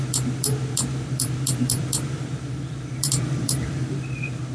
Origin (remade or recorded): remade